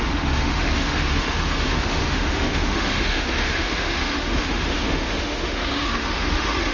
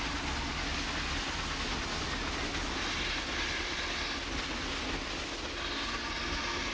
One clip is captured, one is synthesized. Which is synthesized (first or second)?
first